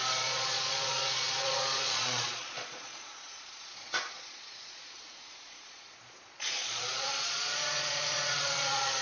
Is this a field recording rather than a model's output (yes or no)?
no